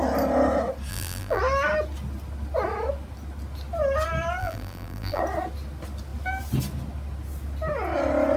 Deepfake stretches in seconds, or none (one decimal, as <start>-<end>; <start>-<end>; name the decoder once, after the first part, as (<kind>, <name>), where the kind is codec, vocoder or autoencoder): 0.9-1.4 (vocoder, BigVGAN v2); 4.4-5.2

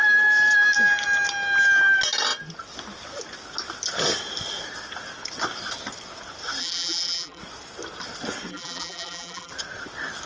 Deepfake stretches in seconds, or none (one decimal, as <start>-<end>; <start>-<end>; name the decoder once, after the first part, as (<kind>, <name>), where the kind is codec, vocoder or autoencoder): 6.6-7.4 (vocoder, BigVGAN v2); 8.5-9.5

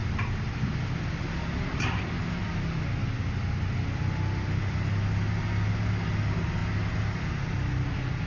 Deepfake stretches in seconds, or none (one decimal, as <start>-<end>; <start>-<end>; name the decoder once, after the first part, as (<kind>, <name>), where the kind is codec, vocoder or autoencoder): none

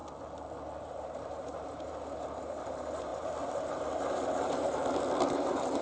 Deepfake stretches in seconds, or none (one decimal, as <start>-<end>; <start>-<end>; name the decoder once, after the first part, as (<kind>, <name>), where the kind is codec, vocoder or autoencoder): 0.8-4.8 (vocoder, BigVGAN v2); 5.3-5.8